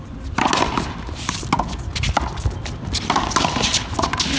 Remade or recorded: recorded